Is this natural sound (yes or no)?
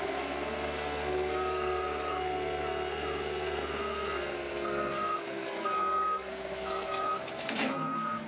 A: no